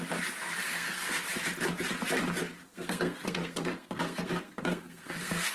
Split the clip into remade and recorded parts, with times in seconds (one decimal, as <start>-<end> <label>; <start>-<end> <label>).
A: 0.0-0.6 recorded; 0.6-1.2 remade; 1.2-2.7 recorded; 2.7-5.5 remade

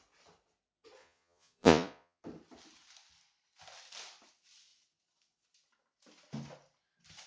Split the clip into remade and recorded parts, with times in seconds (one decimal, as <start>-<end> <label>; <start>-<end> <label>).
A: 0.0-1.0 recorded; 1.0-2.2 remade; 2.2-7.3 recorded

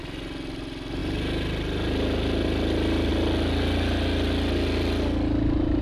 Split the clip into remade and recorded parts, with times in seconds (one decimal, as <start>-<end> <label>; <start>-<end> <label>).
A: 0.0-5.8 recorded

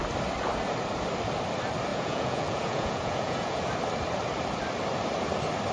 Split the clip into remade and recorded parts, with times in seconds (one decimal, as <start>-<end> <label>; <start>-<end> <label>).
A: 0.0-1.9 recorded; 1.9-3.7 remade; 3.7-5.7 recorded